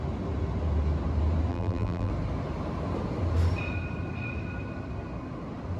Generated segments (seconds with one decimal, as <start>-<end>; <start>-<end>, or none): 1.5-2.1